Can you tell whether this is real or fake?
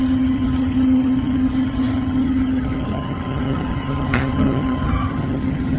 fake